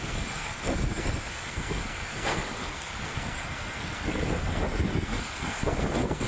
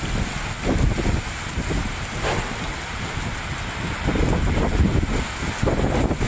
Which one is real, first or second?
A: second